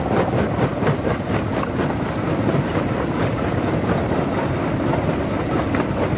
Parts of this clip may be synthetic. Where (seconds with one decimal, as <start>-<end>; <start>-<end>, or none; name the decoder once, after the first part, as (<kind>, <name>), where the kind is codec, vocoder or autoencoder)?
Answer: none